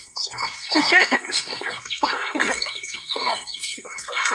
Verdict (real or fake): fake